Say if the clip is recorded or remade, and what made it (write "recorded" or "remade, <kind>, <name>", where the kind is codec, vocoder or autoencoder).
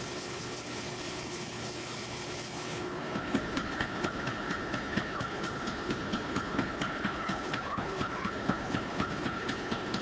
remade, codec, HILCodec